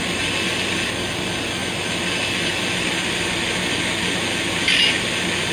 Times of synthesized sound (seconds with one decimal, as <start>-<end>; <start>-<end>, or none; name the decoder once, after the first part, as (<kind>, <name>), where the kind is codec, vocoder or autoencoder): none